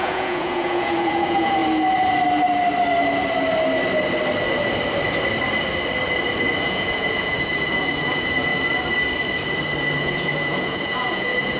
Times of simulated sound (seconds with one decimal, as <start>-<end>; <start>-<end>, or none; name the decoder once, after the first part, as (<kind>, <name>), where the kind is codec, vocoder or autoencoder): 0.0-1.6 (vocoder, Vocos); 6.6-8.5; 10.0-11.6